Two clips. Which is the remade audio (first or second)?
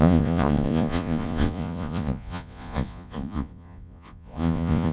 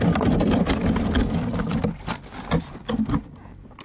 first